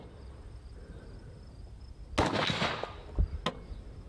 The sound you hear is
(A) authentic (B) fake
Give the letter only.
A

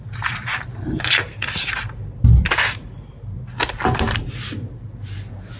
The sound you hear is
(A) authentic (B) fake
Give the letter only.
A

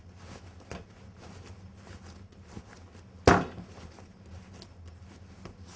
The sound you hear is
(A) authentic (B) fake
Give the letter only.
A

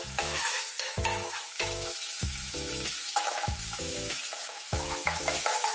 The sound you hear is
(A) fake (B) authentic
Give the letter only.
A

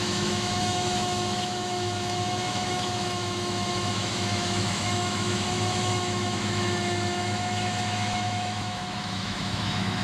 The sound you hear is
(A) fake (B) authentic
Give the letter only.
A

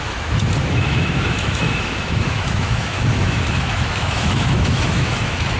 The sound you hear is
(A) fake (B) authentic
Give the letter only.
A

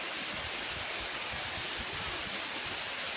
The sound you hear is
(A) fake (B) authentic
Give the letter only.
B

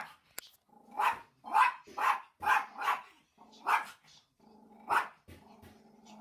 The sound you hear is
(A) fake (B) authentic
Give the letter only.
B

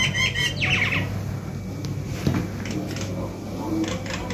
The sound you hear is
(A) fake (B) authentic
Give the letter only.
B